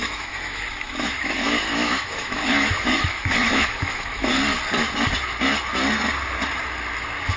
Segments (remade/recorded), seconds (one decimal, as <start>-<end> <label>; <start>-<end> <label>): 0.0-4.3 remade; 4.3-7.4 recorded